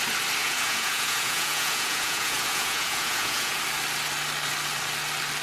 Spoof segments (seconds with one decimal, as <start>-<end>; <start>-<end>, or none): 0.4-3.6